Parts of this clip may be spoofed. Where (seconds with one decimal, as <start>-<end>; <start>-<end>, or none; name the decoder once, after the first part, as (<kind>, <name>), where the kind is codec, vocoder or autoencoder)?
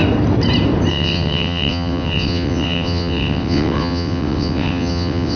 0.9-5.4 (vocoder, WaveNeXt)